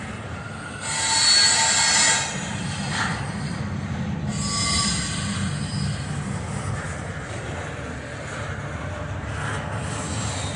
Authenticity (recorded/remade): recorded